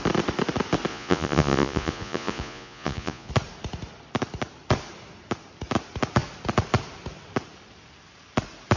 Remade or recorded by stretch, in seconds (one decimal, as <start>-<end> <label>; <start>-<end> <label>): 0.0-0.9 recorded; 0.9-3.3 remade; 3.3-8.8 recorded